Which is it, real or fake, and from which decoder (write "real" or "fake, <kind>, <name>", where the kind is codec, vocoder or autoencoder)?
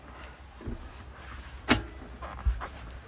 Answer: real